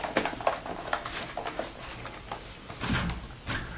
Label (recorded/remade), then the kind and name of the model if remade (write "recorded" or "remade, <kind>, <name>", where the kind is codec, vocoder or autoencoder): recorded